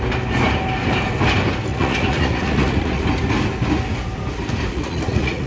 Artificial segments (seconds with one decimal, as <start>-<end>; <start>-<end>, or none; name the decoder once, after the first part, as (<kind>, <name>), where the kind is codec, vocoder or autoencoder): 1.7-3.0 (vocoder, Vocos); 4.7-5.5